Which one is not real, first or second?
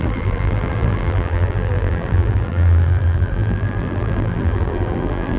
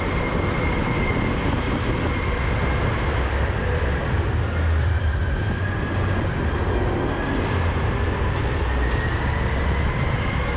first